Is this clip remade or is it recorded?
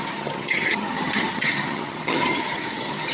remade